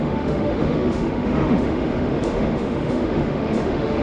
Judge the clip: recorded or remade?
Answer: remade